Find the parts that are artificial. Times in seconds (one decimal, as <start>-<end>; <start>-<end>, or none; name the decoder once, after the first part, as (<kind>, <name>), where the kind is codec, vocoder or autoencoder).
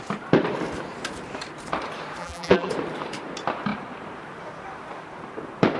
2.2-2.7 (vocoder, BigVGAN v2)